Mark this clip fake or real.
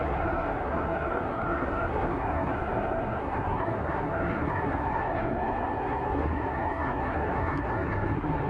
fake